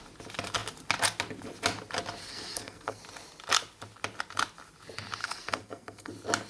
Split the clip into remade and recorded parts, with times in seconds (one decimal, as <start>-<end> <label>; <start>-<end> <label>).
0.0-2.2 recorded; 2.2-3.0 remade; 3.0-5.2 recorded; 5.2-6.1 remade; 6.1-6.5 recorded